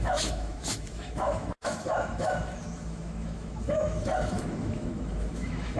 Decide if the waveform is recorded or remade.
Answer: remade